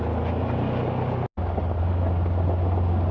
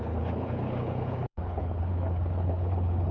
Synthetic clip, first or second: second